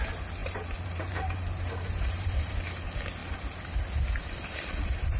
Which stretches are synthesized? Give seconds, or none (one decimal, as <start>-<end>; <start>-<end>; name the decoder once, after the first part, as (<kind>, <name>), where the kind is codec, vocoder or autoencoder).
0.4-2.5 (vocoder, BigVGAN v2)